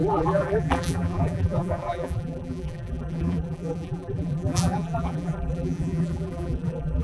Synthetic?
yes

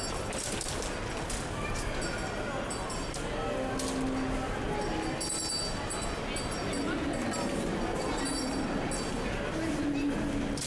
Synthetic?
no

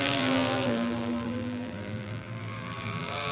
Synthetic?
yes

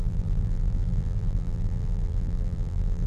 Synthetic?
yes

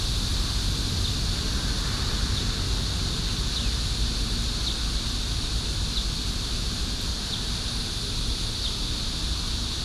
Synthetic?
no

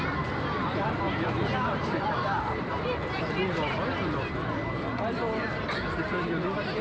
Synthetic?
yes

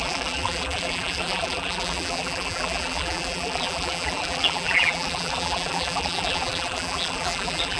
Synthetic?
yes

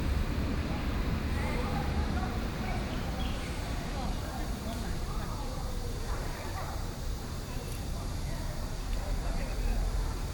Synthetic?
yes